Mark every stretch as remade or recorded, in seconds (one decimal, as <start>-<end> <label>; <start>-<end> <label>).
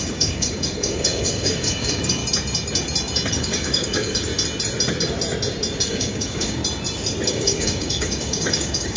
0.0-2.2 remade; 2.2-3.3 recorded; 3.3-4.3 remade; 4.3-5.8 recorded; 5.8-6.6 remade; 6.6-7.3 recorded; 7.3-9.0 remade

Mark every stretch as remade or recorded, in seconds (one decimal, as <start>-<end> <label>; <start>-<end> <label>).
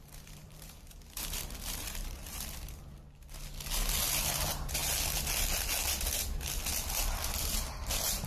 0.0-0.4 recorded; 0.4-2.8 remade; 2.8-8.3 recorded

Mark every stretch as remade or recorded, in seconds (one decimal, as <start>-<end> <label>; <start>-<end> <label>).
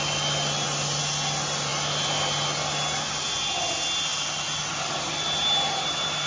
0.0-6.3 recorded